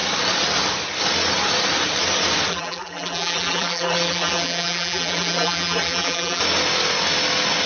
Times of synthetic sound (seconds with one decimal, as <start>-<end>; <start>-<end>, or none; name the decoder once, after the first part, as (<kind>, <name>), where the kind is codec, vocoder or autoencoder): 2.5-6.4 (vocoder, BigVGAN v2)